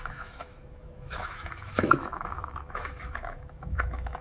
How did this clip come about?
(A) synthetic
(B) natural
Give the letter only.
A